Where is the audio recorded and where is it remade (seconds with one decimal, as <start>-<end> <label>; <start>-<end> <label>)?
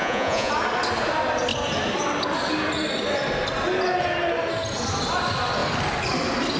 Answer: 0.0-0.5 remade; 0.5-6.6 recorded